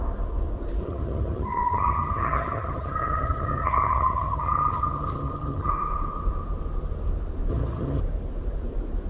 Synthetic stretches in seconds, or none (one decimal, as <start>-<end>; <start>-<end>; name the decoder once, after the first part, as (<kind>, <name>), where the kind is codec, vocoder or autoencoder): 0.8-5.7 (vocoder, HiFi-GAN); 7.5-8.0